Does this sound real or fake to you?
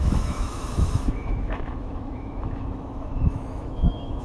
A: fake